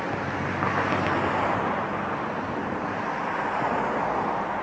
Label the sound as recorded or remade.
recorded